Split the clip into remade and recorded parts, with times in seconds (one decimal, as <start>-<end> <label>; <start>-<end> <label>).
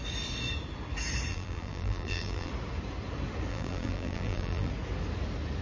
0.0-1.3 recorded; 1.3-2.5 remade; 2.5-3.5 recorded; 3.5-4.7 remade; 4.7-5.6 recorded